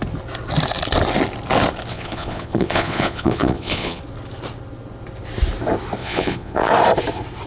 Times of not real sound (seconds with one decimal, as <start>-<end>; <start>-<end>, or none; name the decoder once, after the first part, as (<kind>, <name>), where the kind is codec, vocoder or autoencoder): 1.9-4.0 (vocoder, Vocos); 6.0-6.7